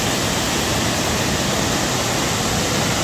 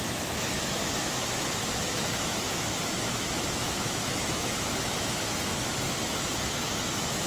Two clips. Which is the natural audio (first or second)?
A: first